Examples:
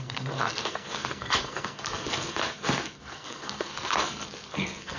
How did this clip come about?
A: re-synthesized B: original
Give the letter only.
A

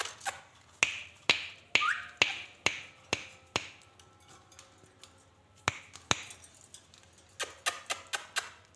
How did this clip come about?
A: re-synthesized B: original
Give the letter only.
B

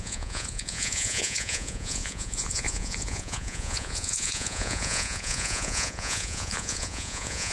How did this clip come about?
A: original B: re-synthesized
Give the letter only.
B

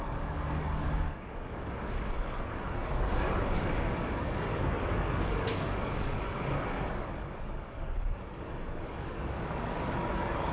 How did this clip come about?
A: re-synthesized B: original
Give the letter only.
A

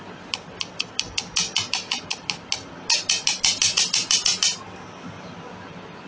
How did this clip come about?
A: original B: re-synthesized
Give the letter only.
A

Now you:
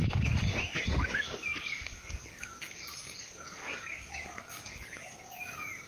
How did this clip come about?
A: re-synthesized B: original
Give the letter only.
A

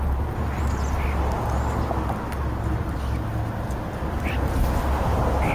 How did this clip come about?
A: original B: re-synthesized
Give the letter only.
A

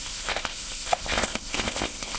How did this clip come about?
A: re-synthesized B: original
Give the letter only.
A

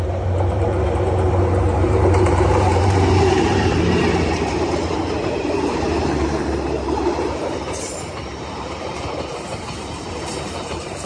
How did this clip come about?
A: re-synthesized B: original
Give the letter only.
A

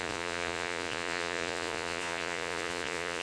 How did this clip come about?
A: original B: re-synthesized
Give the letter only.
B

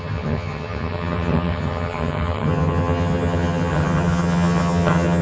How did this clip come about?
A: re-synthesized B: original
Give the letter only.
A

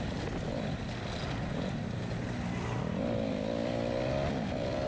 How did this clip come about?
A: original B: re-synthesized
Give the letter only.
A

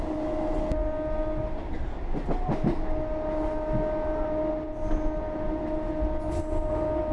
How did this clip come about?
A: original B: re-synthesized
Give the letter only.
A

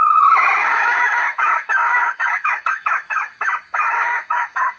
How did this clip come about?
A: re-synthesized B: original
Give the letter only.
A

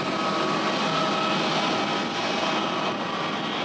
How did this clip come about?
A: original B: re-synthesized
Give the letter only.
A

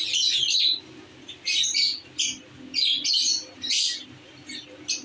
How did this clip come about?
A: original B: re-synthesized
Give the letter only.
A